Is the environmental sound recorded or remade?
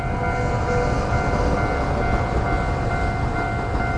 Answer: recorded